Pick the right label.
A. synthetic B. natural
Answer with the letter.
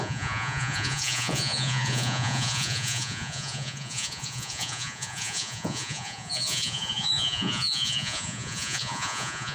A